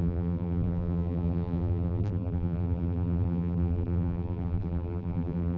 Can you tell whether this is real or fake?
fake